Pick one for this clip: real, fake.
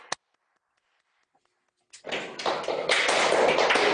real